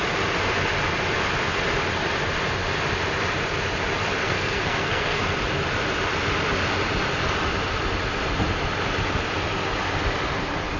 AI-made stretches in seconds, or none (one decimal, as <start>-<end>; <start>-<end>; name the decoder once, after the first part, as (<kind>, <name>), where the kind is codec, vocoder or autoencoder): 4.2-5.2 (codec, SNAC)